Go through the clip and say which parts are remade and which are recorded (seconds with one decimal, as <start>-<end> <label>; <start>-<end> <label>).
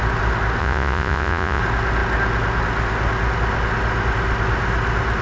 0.0-0.6 recorded; 0.6-1.6 remade; 1.6-5.2 recorded